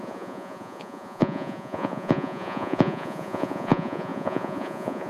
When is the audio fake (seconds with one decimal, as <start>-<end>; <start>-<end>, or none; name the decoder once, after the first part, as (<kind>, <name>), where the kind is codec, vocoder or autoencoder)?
0.0-5.1 (vocoder, Vocos)